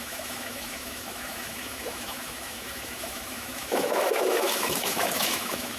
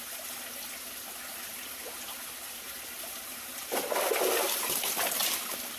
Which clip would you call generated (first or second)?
first